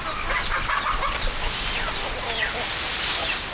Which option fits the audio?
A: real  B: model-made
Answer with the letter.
A